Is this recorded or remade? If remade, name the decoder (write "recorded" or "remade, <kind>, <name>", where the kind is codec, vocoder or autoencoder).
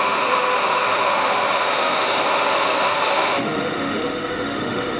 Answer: remade, autoencoder, DAC-VAE